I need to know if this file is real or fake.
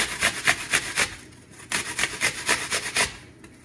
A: real